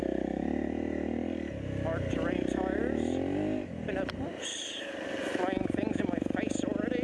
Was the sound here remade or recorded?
recorded